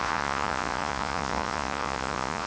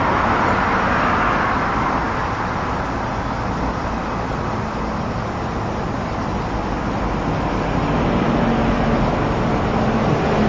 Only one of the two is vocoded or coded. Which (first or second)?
first